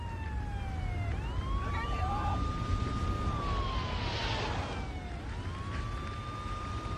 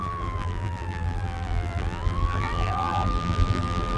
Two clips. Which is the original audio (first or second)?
first